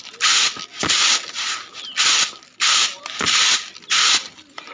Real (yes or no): yes